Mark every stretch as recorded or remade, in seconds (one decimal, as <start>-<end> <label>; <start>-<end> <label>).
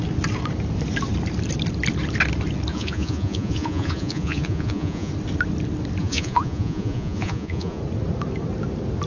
0.0-2.7 recorded; 2.7-5.1 remade; 5.1-6.0 recorded; 6.0-7.8 remade; 7.8-9.1 recorded